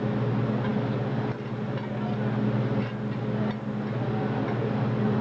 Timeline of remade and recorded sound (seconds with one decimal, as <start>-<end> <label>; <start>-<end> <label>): 0.0-5.2 recorded